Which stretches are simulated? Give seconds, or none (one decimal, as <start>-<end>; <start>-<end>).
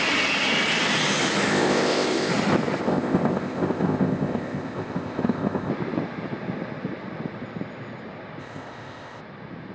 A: 1.5-2.3; 2.8-5.7; 8.4-9.2